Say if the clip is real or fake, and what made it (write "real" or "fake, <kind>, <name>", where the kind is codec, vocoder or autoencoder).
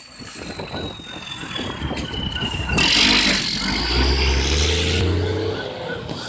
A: real